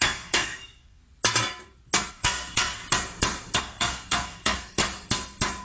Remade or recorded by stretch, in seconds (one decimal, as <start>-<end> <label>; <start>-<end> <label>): 0.0-1.0 remade; 1.0-2.1 recorded; 2.1-2.8 remade; 2.8-3.6 recorded; 3.6-4.8 remade; 4.8-5.6 recorded